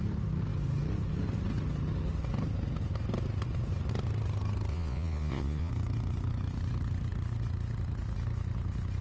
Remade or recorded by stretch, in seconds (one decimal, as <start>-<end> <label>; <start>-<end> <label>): 0.0-4.7 recorded; 4.7-5.7 remade; 5.7-9.0 recorded